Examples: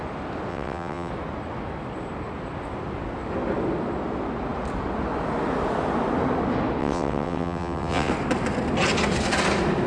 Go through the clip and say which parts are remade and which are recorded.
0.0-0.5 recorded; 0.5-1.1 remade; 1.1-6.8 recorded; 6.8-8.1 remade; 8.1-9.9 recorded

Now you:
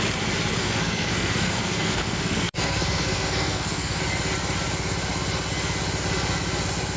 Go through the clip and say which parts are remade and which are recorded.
0.0-0.6 recorded; 0.6-4.0 remade; 4.0-7.0 recorded

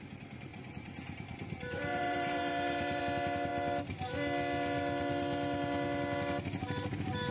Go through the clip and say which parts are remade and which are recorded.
0.0-0.5 recorded; 0.5-3.0 remade; 3.0-7.3 recorded

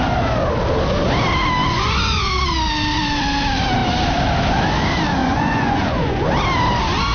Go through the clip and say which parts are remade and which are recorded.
0.0-1.6 recorded; 1.6-2.3 remade; 2.3-5.2 recorded; 5.2-6.3 remade; 6.3-7.1 recorded

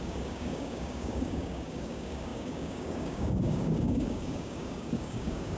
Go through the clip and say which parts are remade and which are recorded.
0.0-5.6 remade

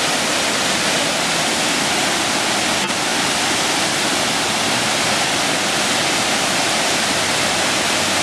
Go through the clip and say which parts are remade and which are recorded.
0.0-8.2 recorded